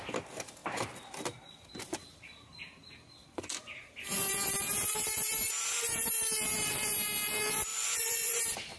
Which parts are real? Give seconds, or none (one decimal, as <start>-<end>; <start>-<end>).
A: 0.0-7.7; 8.4-8.8